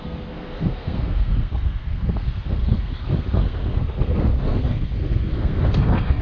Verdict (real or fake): fake